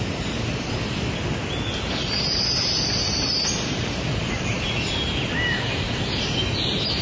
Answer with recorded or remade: recorded